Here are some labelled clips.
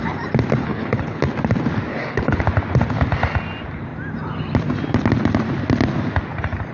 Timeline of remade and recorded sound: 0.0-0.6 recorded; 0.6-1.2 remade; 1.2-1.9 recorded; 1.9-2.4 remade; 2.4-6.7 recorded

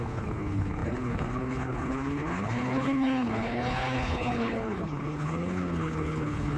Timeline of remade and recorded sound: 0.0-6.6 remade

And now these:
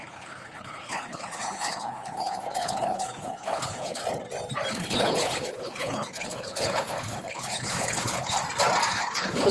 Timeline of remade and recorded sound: 0.0-4.0 remade; 4.0-4.7 recorded; 4.7-8.4 remade; 8.4-8.9 recorded; 8.9-9.5 remade

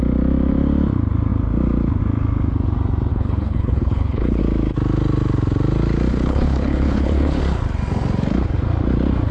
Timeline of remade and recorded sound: 0.0-3.1 recorded; 3.1-4.4 remade; 4.4-6.1 recorded; 6.1-7.4 remade; 7.4-9.3 recorded